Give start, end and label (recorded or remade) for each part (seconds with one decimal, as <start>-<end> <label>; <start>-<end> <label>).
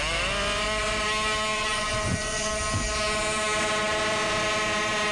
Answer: 0.0-1.5 recorded; 1.5-2.5 remade; 2.5-5.1 recorded